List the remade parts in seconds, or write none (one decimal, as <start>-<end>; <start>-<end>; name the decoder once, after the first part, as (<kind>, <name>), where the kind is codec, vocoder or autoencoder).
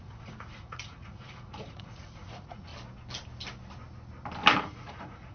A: 0.0-2.7 (vocoder, Vocos); 4.6-5.3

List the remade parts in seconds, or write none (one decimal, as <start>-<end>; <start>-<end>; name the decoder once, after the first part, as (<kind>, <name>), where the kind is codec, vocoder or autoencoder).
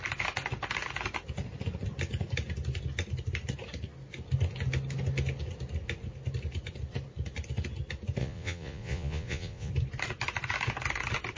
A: 8.2-9.7 (vocoder, Vocos)